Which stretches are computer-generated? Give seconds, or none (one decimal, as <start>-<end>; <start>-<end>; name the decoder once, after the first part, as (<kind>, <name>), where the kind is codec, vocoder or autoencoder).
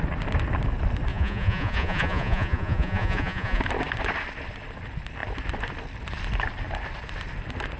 1.1-3.6 (vocoder, Vocos)